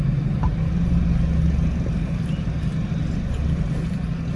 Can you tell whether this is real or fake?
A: real